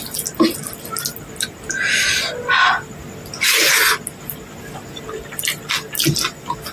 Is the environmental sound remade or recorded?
recorded